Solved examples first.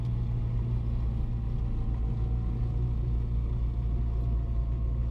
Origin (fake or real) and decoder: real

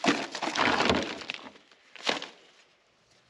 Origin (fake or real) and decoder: real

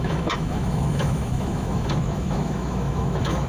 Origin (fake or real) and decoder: fake, autoencoder, DAC-VAE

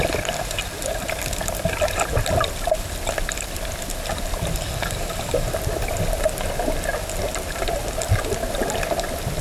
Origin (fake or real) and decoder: real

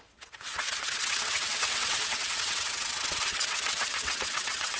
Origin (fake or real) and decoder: fake, vocoder, WaveNeXt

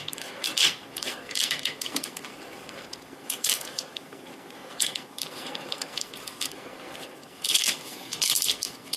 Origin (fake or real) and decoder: fake, codec, SNAC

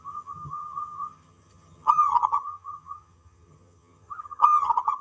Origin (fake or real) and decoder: fake, vocoder, HiFi-GAN